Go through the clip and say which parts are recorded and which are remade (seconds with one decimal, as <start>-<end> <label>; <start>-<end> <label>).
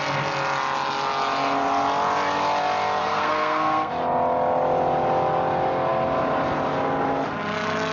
0.0-3.0 recorded; 3.0-3.9 remade; 3.9-7.9 recorded